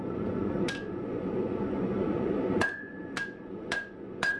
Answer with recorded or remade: remade